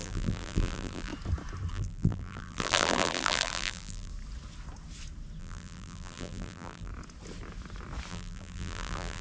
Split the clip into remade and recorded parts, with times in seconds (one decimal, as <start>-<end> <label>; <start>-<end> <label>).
0.0-1.1 remade; 1.1-1.7 recorded; 1.7-4.1 remade; 4.1-5.4 recorded; 5.4-6.9 remade; 6.9-8.1 recorded; 8.1-9.2 remade

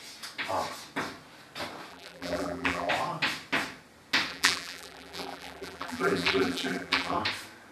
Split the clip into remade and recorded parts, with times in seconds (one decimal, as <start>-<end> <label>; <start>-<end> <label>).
0.0-1.9 recorded; 1.9-2.9 remade; 2.9-4.3 recorded; 4.3-7.2 remade; 7.2-7.7 recorded

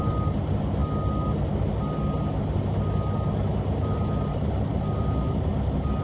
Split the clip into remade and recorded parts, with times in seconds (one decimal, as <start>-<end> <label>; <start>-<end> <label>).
0.0-3.5 recorded; 3.5-5.5 remade; 5.5-6.0 recorded

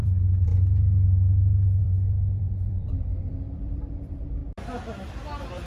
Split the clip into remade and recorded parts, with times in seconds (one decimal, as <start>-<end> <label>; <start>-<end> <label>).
0.0-0.5 remade; 0.5-1.8 recorded; 1.8-4.4 remade; 4.4-5.1 recorded; 5.1-5.7 remade

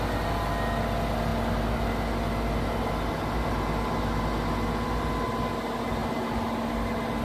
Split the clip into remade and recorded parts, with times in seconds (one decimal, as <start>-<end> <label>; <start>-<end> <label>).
0.0-7.2 recorded